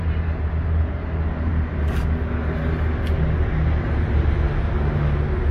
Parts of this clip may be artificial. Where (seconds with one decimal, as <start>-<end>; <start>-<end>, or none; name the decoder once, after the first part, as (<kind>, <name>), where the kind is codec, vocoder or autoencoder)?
none